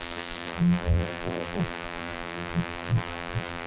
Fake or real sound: fake